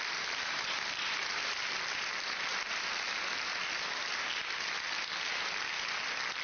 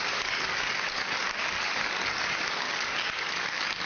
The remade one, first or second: second